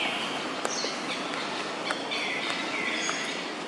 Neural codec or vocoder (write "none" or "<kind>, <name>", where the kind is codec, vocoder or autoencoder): none